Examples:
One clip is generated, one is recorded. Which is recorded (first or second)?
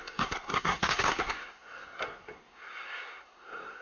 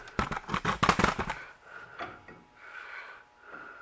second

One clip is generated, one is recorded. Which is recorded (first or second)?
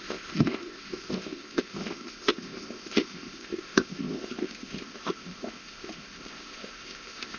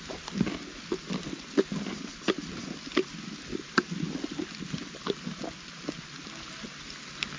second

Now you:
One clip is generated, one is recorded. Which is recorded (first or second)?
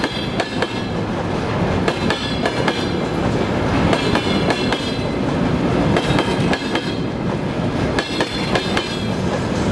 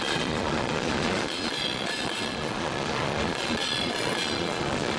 first